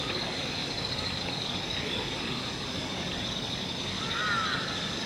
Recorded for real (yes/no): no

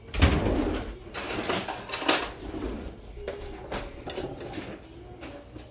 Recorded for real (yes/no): yes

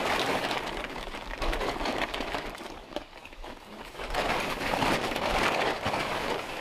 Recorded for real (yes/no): no